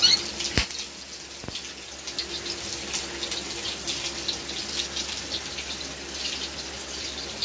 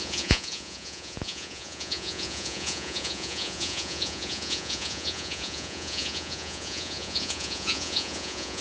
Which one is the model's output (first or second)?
second